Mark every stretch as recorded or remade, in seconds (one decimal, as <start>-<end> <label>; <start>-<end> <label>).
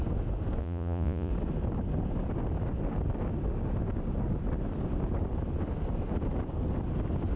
0.0-0.6 recorded; 0.6-1.3 remade; 1.3-7.4 recorded